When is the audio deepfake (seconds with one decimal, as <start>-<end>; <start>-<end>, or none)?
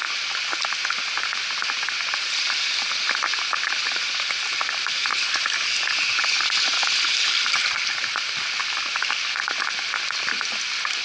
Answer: none